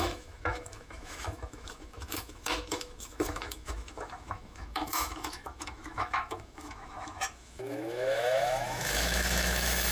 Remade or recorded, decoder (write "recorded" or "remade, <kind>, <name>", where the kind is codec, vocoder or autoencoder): remade, autoencoder, DAC-VAE